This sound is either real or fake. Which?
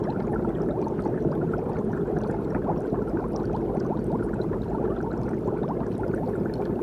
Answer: real